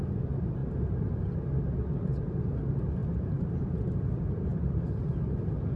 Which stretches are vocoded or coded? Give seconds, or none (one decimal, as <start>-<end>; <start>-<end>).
3.0-3.5; 4.5-5.1